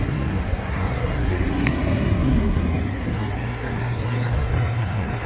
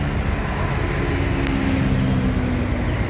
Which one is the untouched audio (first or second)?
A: second